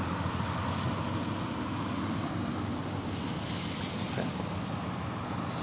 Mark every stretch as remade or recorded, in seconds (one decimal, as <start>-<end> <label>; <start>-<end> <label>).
0.0-5.6 recorded

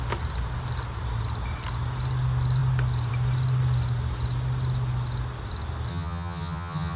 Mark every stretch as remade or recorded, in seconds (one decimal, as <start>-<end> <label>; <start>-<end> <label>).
0.0-5.9 recorded; 5.9-7.0 remade

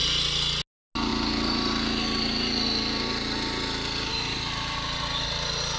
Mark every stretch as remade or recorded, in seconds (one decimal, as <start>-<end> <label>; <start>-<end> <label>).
0.0-5.8 recorded

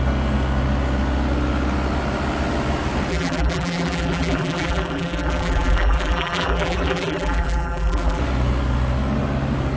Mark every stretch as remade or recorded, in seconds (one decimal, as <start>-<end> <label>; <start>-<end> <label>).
0.0-3.1 recorded; 3.1-8.2 remade; 8.2-9.8 recorded

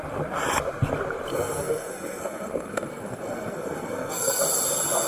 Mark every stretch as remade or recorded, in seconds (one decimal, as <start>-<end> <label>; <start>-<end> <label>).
0.0-1.3 recorded; 1.3-4.4 remade; 4.4-5.1 recorded